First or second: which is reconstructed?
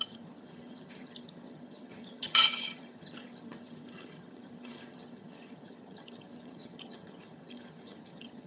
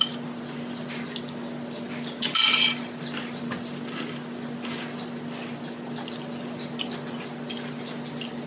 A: first